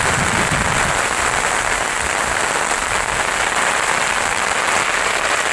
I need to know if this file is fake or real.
real